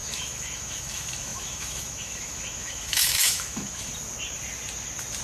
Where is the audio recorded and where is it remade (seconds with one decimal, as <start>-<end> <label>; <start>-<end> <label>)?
0.0-3.9 remade; 3.9-5.2 recorded